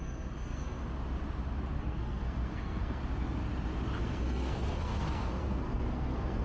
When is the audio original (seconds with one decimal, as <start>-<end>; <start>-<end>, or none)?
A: 0.8-1.8; 3.0-4.0